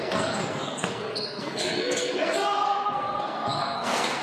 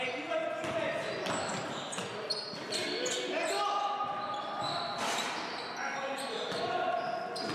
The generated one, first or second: first